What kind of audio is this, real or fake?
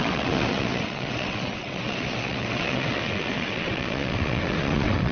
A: fake